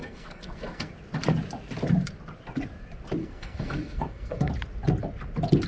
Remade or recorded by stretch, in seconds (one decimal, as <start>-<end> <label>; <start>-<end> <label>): 0.0-0.9 remade; 0.9-3.2 recorded; 3.2-4.5 remade; 4.5-5.7 recorded